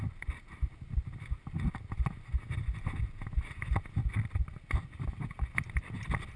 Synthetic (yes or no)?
no